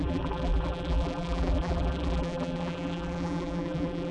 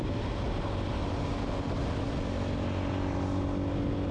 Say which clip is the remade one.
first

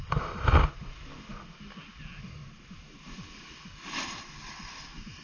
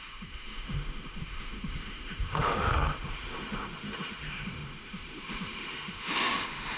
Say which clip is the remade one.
second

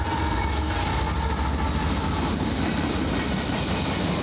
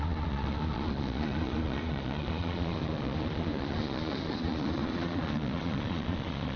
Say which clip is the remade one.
second